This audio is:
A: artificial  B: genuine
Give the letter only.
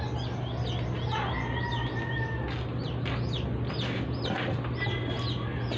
B